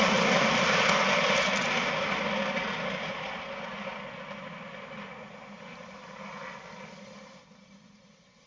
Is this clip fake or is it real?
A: real